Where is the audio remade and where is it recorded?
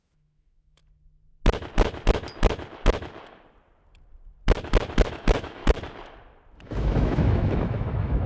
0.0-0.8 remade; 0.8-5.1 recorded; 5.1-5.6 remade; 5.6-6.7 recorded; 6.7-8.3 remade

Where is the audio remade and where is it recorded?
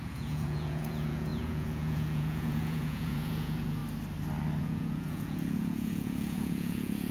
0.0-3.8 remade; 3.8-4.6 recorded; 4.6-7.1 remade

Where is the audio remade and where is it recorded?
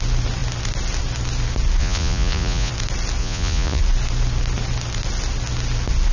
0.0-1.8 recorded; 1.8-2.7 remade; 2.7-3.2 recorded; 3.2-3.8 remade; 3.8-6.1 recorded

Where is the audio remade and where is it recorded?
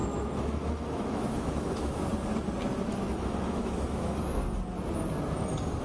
0.0-2.1 remade; 2.1-2.9 recorded; 2.9-4.4 remade; 4.4-5.8 recorded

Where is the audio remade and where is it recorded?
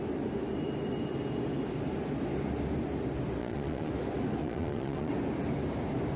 0.0-3.4 recorded; 3.4-3.9 remade; 3.9-4.4 recorded; 4.4-5.1 remade; 5.1-6.2 recorded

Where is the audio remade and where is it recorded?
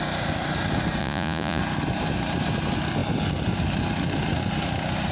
0.0-1.0 recorded; 1.0-1.6 remade; 1.6-5.1 recorded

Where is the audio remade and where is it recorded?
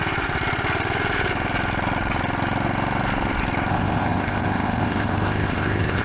0.0-3.7 recorded; 3.7-6.0 remade